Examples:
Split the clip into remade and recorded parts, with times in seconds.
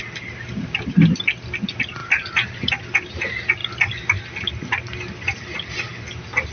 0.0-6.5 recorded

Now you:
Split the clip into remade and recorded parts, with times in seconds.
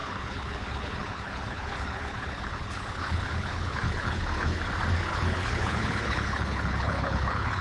0.0-4.6 remade; 4.6-5.1 recorded; 5.1-7.6 remade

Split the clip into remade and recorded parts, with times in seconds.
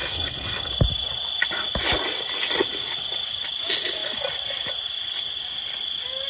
0.0-0.7 remade; 0.7-6.3 recorded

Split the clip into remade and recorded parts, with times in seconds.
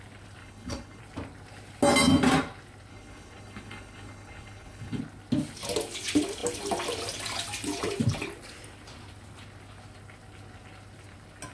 0.0-0.4 recorded; 0.4-1.0 remade; 1.0-2.9 recorded; 2.9-5.0 remade; 5.0-11.5 recorded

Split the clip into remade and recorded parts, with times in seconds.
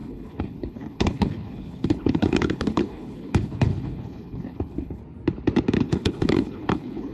0.0-5.0 remade; 5.0-5.8 recorded; 5.8-7.1 remade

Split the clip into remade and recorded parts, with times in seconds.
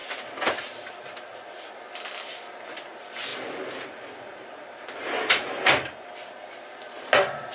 0.0-7.5 recorded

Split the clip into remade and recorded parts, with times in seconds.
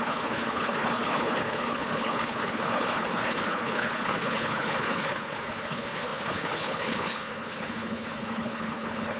0.0-9.2 remade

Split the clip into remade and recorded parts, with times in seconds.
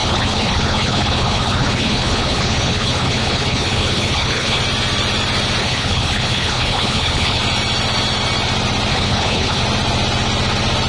0.0-4.6 remade; 4.6-5.6 recorded; 5.6-7.4 remade; 7.4-8.9 recorded; 8.9-9.6 remade; 9.6-10.9 recorded